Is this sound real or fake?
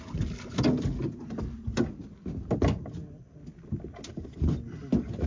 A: real